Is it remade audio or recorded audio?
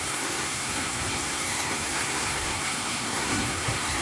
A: remade